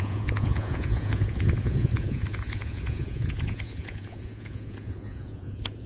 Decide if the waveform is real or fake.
fake